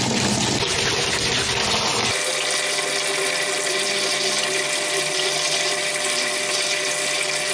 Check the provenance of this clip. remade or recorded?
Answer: recorded